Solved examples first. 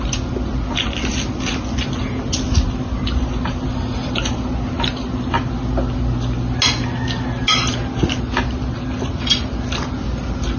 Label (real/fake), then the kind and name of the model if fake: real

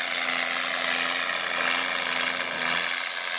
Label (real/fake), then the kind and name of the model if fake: real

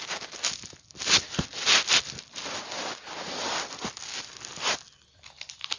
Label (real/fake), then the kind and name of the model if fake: real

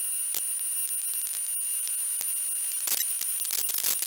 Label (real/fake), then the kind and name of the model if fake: real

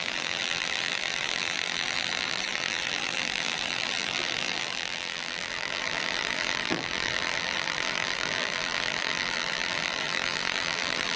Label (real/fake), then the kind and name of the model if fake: fake, vocoder, BigVGAN v2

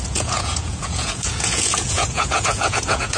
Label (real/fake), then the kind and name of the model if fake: fake, vocoder, Vocos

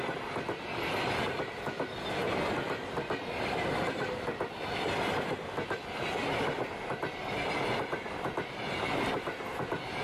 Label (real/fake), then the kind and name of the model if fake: real